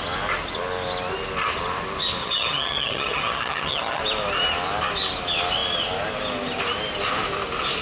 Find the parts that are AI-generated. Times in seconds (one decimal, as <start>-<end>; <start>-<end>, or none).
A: 2.2-4.0